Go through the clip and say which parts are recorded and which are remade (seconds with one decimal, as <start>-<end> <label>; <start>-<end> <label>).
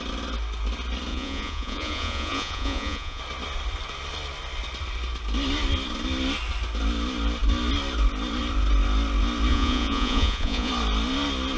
0.0-1.1 recorded; 1.1-3.2 remade; 3.2-9.5 recorded; 9.5-10.7 remade; 10.7-11.6 recorded